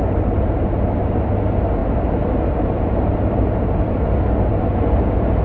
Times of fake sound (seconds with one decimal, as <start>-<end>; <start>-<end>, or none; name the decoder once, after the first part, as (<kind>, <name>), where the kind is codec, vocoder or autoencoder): none